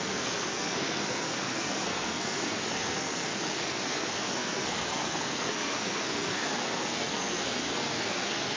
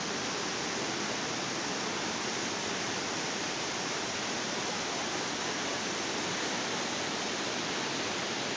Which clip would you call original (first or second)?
second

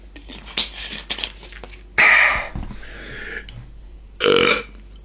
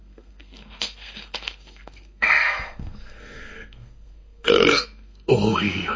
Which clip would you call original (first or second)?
first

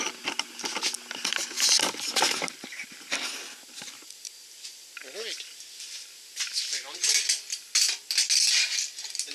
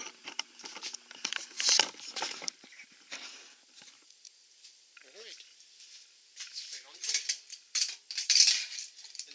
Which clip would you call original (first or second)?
first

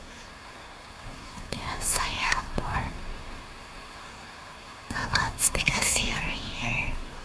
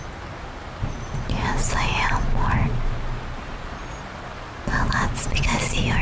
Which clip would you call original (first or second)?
second